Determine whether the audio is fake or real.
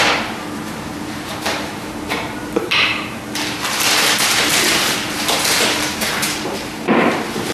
fake